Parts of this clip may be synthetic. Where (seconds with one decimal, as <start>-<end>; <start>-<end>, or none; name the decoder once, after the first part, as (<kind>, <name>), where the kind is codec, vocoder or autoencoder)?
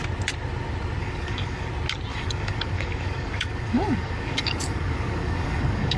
1.0-1.7 (codec, DAC); 2.1-6.0